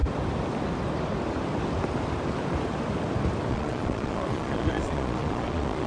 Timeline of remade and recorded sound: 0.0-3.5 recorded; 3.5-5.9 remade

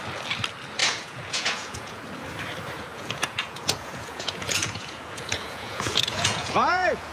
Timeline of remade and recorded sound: 0.0-0.8 recorded; 0.8-2.0 remade; 2.0-2.9 recorded; 2.9-7.1 remade

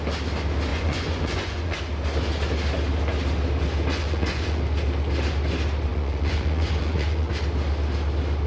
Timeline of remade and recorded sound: 0.0-0.7 recorded; 0.7-1.8 remade; 1.8-3.9 recorded; 3.9-4.6 remade; 4.6-5.9 recorded; 5.9-7.3 remade; 7.3-8.5 recorded